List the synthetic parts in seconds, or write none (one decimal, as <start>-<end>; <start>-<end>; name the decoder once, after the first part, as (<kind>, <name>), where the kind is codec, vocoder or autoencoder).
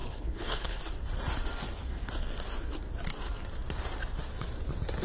0.0-0.8 (codec, HILCodec)